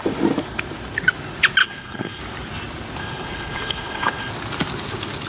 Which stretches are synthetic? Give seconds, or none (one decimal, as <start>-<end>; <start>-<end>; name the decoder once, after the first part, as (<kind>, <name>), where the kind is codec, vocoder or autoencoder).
1.6-2.2 (codec, HILCodec); 3.0-4.3